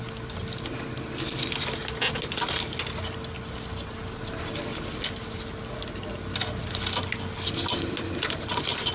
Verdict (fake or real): real